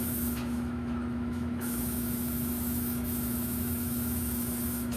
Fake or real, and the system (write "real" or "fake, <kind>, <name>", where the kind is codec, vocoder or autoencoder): fake, autoencoder, DAC-VAE